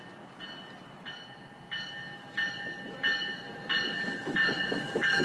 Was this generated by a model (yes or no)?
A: no